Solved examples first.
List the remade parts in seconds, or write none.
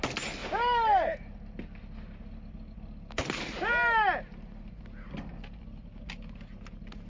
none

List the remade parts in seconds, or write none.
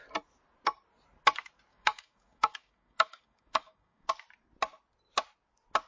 1.7-4.1 (codec, DAC)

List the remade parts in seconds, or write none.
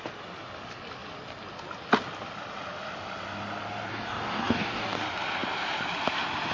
3.9-5.0 (codec, DAC)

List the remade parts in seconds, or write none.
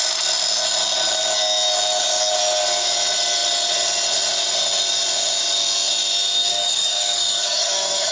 6.5-8.1 (codec, DAC)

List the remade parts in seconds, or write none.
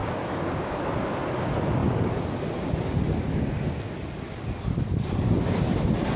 0.0-0.8 (codec, DAC)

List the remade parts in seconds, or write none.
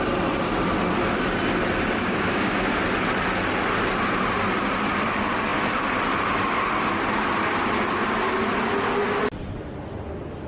2.0-2.8 (codec, DAC)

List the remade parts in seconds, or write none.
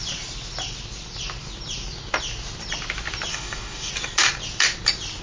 3.3-3.9 (codec, DAC)